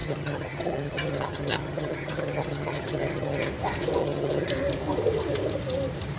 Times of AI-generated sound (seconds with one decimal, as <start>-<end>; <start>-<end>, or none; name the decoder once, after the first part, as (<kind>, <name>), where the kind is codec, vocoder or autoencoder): 0.0-3.5 (vocoder, HiFi-GAN); 4.0-4.5